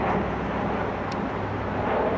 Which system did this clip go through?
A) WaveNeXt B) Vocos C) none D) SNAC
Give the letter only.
C